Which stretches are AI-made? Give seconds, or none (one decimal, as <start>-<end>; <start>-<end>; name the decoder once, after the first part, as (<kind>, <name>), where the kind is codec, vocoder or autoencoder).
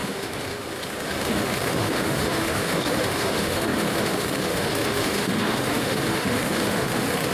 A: 0.0-7.3 (autoencoder, DAC-VAE)